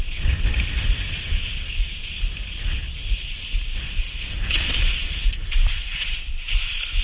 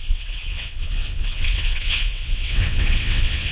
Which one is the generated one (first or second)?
second